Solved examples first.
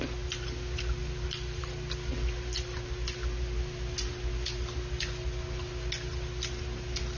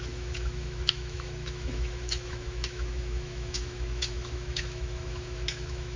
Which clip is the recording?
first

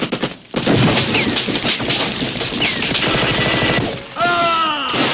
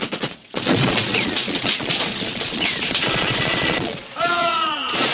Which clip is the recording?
first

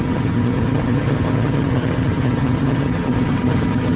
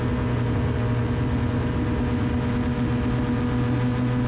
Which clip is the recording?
second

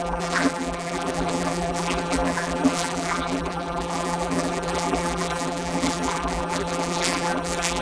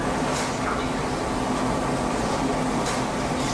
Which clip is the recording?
second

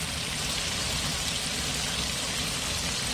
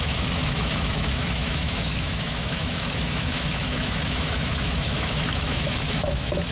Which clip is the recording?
first